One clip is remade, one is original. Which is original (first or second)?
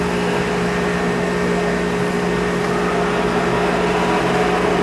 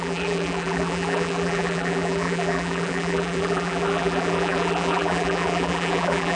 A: first